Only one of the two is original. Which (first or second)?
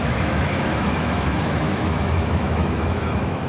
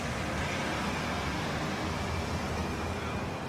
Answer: second